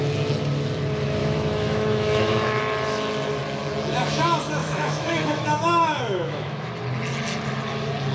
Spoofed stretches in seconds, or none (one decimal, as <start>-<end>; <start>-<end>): 1.2-2.6; 4.6-6.7

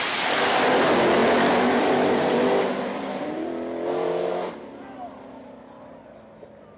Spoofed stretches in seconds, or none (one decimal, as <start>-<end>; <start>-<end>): 1.2-4.3

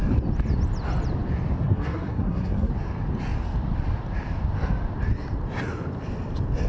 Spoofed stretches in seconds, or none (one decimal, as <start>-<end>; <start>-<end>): 1.6-2.7

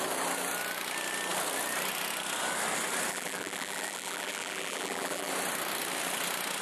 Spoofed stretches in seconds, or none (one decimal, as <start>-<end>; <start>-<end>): 3.1-5.3

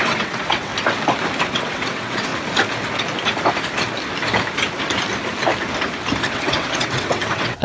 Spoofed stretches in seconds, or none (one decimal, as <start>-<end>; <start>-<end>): 0.0-0.7; 1.4-2.3; 6.3-7.6